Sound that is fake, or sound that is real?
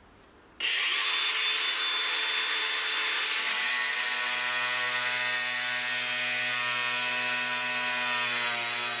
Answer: real